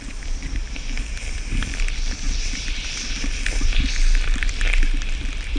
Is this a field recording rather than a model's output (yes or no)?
no